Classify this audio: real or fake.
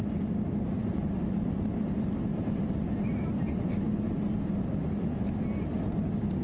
real